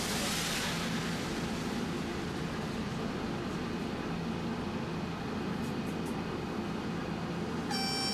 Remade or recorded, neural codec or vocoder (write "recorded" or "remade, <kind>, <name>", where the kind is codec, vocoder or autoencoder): recorded